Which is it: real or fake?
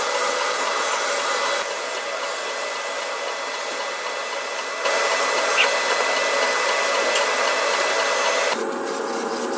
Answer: real